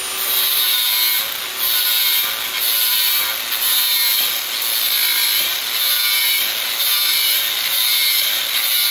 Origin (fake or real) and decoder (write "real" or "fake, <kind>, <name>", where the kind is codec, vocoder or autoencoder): real